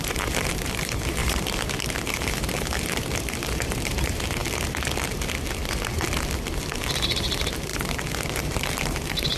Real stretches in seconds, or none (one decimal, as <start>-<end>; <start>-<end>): 4.4-7.3

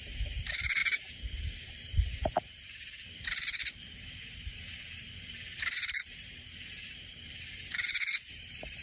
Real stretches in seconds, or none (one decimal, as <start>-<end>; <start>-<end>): none

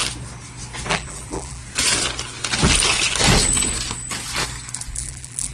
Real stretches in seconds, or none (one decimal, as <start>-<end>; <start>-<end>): 0.0-0.9; 1.6-4.9

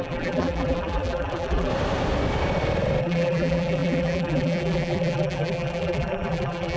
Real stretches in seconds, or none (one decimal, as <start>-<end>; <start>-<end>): 1.7-3.0

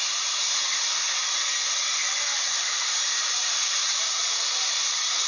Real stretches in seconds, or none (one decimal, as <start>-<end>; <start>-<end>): 0.0-2.0; 4.4-5.3

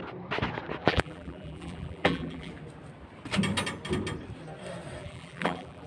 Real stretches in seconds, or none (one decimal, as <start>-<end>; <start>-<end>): 0.0-0.8; 2.5-5.0

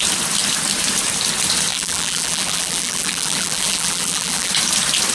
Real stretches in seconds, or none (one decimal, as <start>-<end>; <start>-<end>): 0.0-1.7; 4.5-5.1